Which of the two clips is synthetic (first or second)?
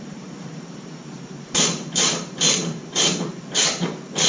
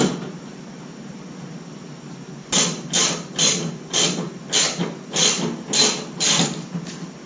first